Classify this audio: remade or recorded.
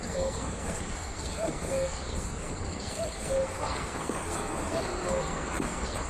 remade